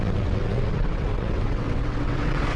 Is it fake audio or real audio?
fake